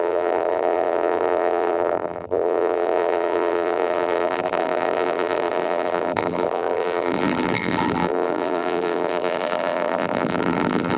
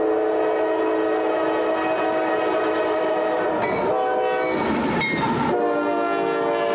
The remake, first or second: first